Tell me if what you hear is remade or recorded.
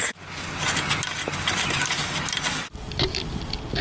recorded